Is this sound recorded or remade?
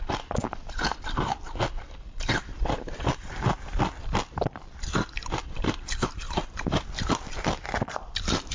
remade